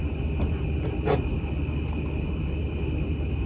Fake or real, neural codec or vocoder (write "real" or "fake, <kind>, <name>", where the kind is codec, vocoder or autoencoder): real